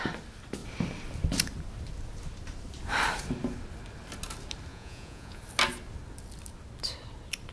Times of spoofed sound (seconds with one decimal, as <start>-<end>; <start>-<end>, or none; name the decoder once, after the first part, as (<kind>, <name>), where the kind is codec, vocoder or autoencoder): 4.7-5.4 (vocoder, Vocos)